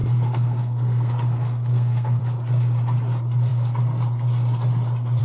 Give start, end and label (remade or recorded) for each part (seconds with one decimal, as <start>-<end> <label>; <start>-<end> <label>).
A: 0.0-2.2 remade; 2.2-5.2 recorded